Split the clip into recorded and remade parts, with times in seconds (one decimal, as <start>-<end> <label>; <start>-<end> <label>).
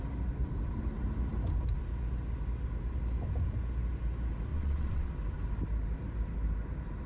0.0-4.5 recorded; 4.5-5.1 remade; 5.1-7.1 recorded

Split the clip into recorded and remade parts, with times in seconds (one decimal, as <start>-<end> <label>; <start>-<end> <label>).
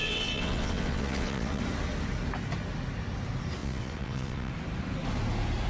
0.0-1.6 remade; 1.6-3.6 recorded; 3.6-4.5 remade; 4.5-5.7 recorded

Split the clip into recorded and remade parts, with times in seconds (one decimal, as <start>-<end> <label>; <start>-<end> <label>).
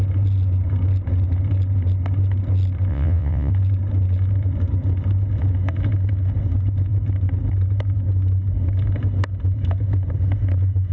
0.0-2.9 recorded; 2.9-3.5 remade; 3.5-10.9 recorded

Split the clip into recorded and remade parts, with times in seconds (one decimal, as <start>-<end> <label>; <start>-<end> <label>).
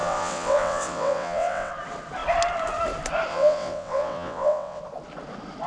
0.0-1.7 remade; 1.7-3.3 recorded; 3.3-4.8 remade; 4.8-5.7 recorded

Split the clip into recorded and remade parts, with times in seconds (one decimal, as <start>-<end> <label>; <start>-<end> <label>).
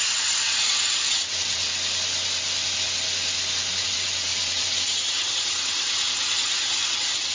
0.0-1.7 remade; 1.7-3.7 recorded; 3.7-7.3 remade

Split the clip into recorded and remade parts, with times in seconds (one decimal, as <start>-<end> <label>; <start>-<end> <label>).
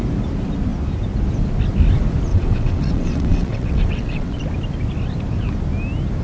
0.0-2.3 recorded; 2.3-4.4 remade; 4.4-6.2 recorded